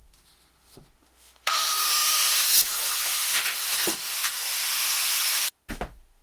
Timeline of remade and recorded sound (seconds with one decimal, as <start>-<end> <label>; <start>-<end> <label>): 0.0-6.2 remade